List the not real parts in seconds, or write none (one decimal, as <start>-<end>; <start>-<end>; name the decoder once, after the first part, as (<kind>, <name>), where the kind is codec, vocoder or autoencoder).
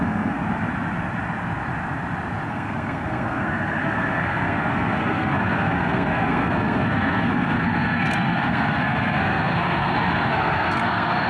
0.0-0.4 (codec, SNAC); 2.5-11.3